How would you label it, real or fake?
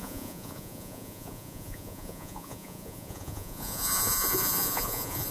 fake